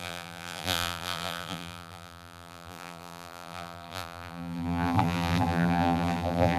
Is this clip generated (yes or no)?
yes